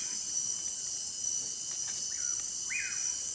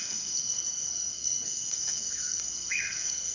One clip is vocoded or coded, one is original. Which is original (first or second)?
first